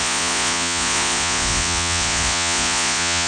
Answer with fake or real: fake